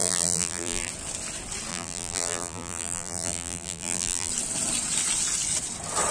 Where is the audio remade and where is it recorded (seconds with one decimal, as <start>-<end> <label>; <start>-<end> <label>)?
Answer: 0.0-0.9 remade; 0.9-1.7 recorded; 1.7-4.3 remade; 4.3-6.1 recorded